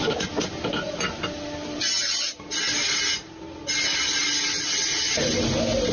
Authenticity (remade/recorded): recorded